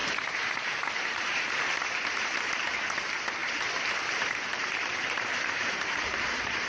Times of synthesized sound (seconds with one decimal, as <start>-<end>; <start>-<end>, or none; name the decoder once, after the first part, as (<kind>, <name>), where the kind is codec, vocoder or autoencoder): 0.0-1.7 (vocoder, BigVGAN v2); 3.4-6.7